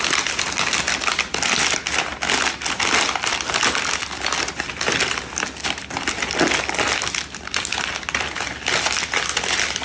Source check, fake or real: real